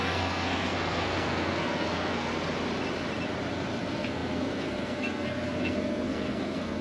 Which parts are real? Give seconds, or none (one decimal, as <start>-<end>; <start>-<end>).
2.3-3.5